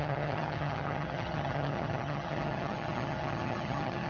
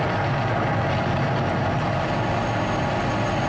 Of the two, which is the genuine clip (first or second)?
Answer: second